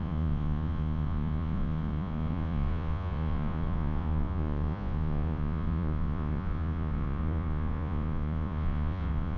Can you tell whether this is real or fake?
fake